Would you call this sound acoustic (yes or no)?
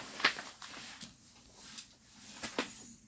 yes